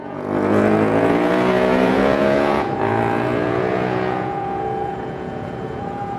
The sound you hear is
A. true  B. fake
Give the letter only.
B